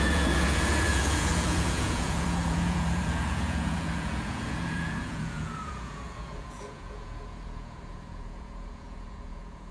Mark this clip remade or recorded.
remade